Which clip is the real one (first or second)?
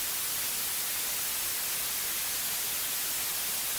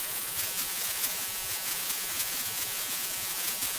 first